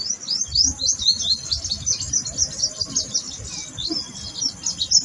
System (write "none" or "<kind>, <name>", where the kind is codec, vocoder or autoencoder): none